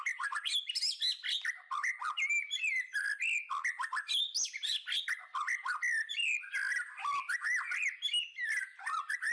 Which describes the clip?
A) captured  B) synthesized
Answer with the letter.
A